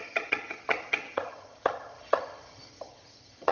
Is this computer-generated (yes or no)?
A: yes